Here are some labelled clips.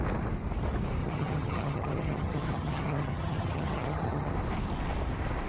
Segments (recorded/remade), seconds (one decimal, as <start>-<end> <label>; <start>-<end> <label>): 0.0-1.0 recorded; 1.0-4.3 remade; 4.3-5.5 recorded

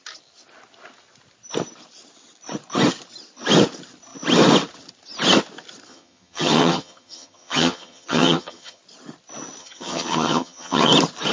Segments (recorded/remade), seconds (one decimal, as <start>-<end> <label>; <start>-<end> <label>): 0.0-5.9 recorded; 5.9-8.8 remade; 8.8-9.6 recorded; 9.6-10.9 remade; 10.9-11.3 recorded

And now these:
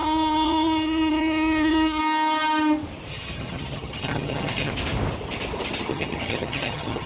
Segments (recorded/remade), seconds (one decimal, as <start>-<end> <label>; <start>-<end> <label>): 0.0-2.0 remade; 2.0-3.1 recorded; 3.1-4.7 remade; 4.7-5.9 recorded; 5.9-7.1 remade